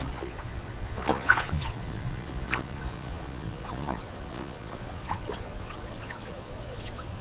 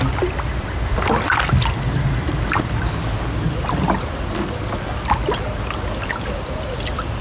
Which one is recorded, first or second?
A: second